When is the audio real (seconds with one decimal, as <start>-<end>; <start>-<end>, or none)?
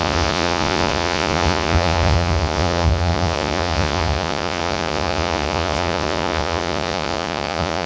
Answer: none